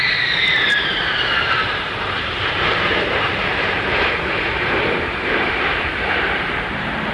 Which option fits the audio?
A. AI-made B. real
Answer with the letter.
A